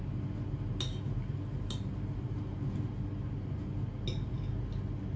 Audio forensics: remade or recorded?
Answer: recorded